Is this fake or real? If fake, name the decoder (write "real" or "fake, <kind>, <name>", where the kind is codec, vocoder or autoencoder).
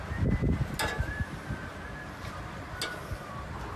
real